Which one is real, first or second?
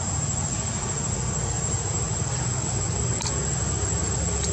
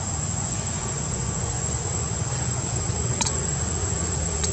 first